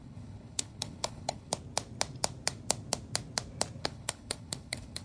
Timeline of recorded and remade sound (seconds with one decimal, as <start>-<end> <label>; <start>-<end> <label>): 0.0-1.5 remade; 1.5-3.8 recorded; 3.8-5.0 remade